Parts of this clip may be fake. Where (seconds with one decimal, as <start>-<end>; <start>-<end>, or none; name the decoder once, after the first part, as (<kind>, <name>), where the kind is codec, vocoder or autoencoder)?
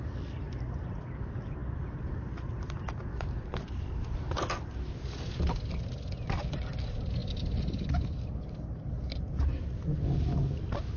none